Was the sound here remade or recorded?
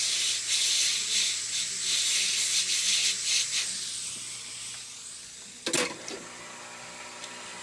recorded